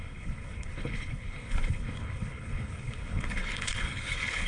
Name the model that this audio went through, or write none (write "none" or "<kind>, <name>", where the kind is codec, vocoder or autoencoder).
codec, HILCodec